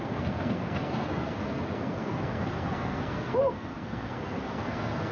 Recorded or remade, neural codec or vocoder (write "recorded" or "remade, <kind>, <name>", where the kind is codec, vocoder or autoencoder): remade, codec, SNAC